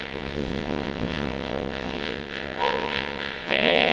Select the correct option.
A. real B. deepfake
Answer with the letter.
B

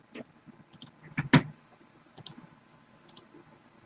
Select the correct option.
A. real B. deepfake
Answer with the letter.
A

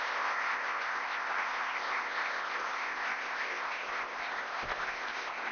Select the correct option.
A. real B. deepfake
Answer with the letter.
B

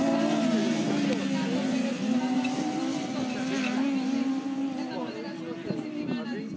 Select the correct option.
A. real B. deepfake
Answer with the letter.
A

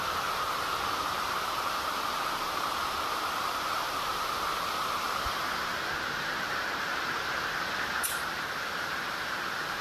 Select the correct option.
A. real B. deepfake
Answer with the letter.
B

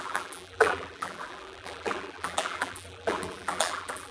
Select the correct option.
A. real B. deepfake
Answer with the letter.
B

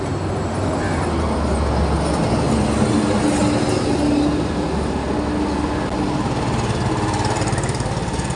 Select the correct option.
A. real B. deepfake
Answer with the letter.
A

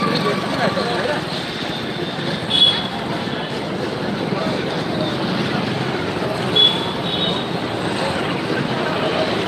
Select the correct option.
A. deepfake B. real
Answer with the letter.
B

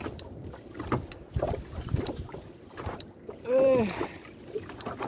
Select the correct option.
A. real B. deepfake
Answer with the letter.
B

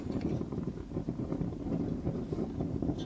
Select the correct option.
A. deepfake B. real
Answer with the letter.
A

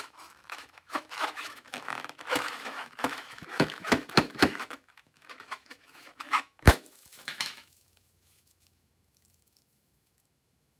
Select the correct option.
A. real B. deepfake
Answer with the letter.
B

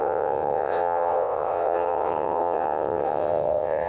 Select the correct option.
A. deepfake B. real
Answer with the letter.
A